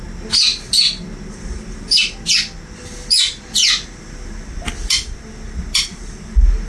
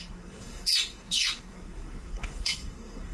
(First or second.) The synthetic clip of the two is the second